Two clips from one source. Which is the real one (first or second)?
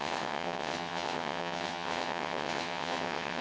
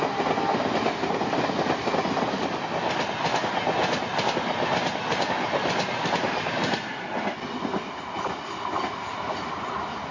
second